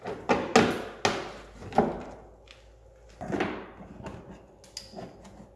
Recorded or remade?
recorded